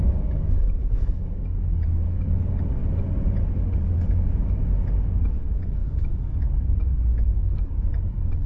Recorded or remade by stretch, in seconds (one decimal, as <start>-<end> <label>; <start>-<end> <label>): 0.0-2.8 remade; 2.8-3.4 recorded; 3.4-4.6 remade; 4.6-5.2 recorded; 5.2-8.5 remade